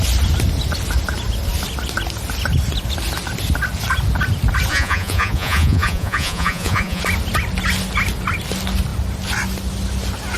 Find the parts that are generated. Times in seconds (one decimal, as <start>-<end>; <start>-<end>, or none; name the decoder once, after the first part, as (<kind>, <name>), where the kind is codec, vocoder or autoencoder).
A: 4.7-7.0 (vocoder, Vocos)